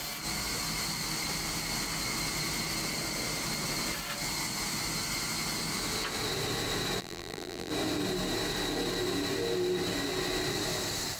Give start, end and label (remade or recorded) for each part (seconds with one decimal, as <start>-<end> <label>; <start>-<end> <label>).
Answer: 0.0-7.0 recorded; 7.0-7.7 remade; 7.7-11.2 recorded